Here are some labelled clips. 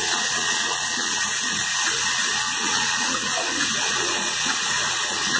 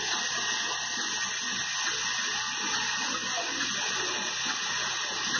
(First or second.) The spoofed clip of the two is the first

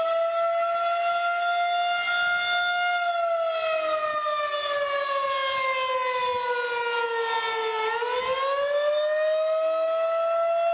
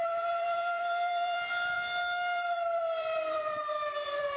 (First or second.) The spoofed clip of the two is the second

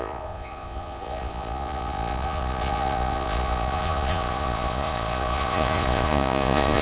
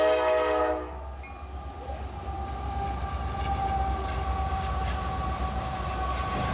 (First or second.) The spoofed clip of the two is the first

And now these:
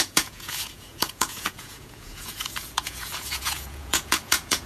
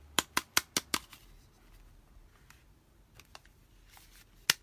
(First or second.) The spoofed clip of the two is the first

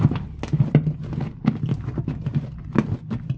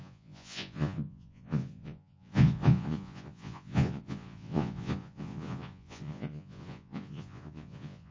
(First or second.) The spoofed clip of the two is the second